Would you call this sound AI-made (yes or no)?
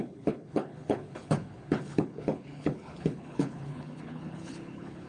yes